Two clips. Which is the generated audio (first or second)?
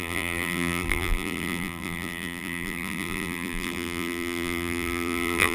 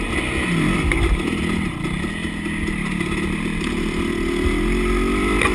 first